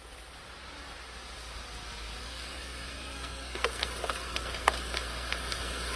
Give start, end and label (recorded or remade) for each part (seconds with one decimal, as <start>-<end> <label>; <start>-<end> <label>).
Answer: 0.0-2.2 recorded; 2.2-6.0 remade